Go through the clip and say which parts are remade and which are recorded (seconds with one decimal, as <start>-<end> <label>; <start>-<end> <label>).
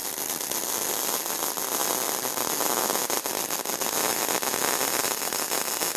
0.0-4.1 recorded; 4.1-5.6 remade; 5.6-6.0 recorded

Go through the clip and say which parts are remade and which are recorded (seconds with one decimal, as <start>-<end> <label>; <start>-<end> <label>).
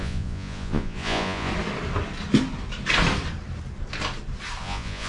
0.0-1.5 remade; 1.5-4.6 recorded; 4.6-5.1 remade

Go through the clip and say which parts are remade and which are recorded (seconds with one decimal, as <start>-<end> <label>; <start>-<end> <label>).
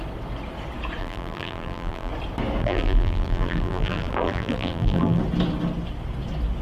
0.0-1.0 recorded; 1.0-2.1 remade; 2.1-2.6 recorded; 2.6-5.2 remade; 5.2-6.6 recorded